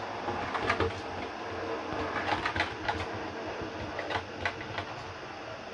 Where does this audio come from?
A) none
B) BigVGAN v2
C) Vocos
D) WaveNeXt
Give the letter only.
A